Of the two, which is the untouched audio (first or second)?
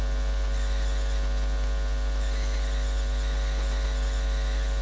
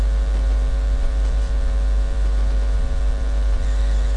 first